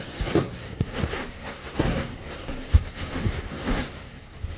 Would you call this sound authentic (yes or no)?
no